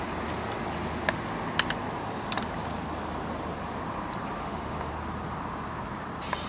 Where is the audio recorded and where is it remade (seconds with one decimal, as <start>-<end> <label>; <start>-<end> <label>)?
0.0-4.4 recorded; 4.4-4.9 remade; 4.9-6.5 recorded